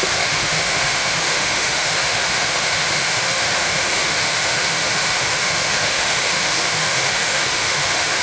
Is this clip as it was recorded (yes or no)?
no